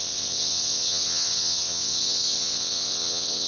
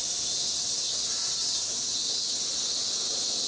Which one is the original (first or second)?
second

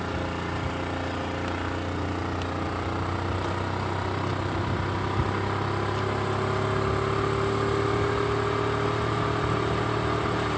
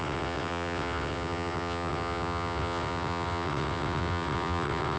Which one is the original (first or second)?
first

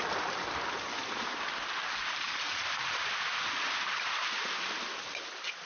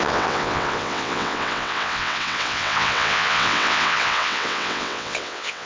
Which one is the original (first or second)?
first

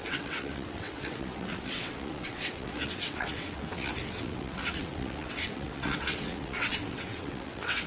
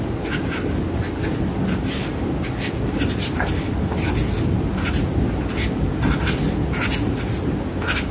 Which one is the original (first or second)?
second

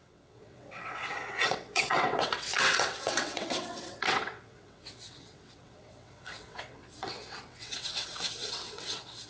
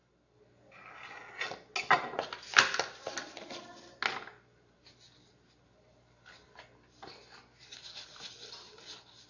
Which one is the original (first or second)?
second